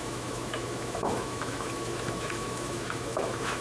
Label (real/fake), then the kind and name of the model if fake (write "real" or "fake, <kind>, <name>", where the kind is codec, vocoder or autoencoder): fake, autoencoder, DAC-VAE